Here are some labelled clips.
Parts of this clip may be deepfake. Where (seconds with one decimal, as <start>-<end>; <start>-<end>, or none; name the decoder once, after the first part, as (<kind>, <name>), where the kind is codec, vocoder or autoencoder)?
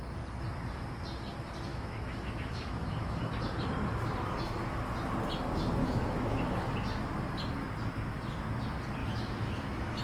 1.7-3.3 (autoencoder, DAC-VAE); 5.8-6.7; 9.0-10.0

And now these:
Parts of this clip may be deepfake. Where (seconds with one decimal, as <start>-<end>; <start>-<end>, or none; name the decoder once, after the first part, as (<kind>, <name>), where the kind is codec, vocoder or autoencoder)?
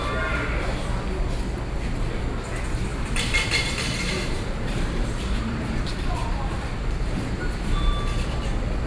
2.9-7.4 (vocoder, BigVGAN v2)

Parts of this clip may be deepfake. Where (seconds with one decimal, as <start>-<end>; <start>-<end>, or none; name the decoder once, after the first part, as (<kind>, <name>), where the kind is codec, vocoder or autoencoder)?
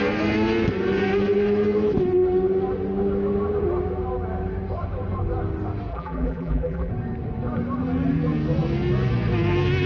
5.9-6.9 (vocoder, BigVGAN v2)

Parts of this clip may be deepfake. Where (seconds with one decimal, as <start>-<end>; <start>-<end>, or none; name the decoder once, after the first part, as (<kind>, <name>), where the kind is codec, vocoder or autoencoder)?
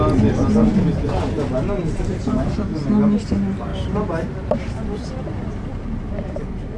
1.8-2.8 (vocoder, BigVGAN v2); 3.7-5.1; 5.7-6.8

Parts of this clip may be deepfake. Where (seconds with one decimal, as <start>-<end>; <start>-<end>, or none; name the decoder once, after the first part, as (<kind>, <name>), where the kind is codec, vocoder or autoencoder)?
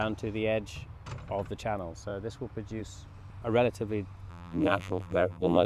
4.3-5.7 (vocoder, BigVGAN v2)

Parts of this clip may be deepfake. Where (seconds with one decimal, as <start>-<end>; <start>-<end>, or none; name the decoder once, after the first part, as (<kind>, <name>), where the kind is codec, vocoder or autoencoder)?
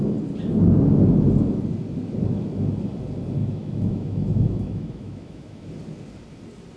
3.4-5.7 (autoencoder, DAC-VAE)